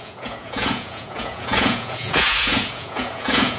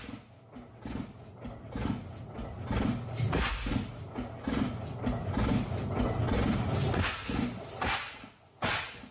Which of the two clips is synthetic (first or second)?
first